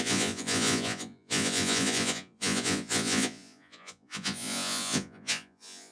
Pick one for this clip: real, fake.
fake